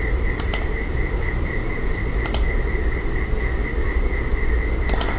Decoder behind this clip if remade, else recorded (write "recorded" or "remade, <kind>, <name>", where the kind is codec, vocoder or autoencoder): remade, vocoder, BigVGAN v2